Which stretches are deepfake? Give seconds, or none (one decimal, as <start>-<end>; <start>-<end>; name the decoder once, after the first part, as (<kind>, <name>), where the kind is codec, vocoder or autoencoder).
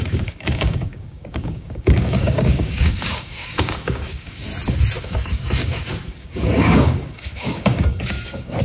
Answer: 0.0-4.5 (codec, DAC); 5.0-8.6